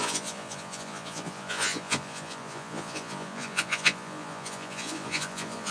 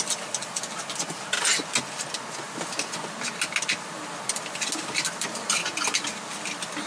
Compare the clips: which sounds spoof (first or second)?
first